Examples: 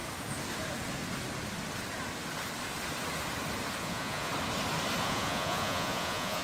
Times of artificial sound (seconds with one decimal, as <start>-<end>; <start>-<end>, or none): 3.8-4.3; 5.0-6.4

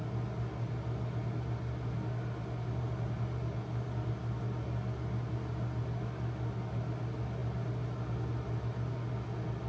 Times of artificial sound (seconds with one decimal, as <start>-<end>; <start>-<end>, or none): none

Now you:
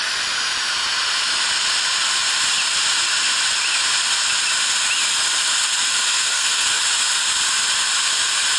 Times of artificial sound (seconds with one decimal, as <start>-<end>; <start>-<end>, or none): 6.1-6.8